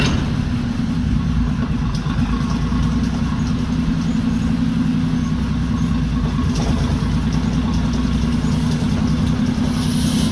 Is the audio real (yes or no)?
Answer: yes